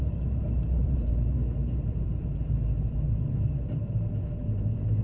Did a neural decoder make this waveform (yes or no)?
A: yes